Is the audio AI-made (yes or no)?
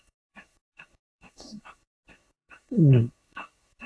yes